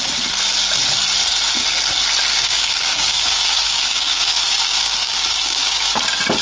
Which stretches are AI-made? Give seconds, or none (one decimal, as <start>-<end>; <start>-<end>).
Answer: 2.3-6.0